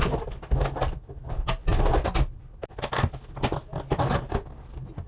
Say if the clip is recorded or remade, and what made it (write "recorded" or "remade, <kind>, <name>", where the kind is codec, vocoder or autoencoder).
recorded